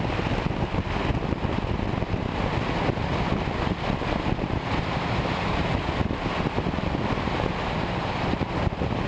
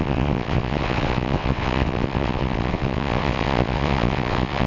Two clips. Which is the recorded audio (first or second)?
first